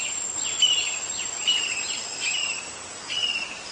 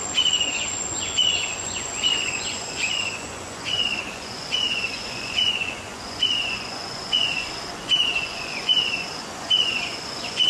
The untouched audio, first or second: first